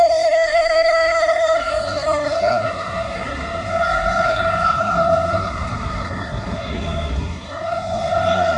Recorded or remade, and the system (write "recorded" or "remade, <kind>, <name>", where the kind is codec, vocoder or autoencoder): remade, codec, SNAC